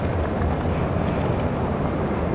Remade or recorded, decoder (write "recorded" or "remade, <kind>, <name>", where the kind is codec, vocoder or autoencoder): recorded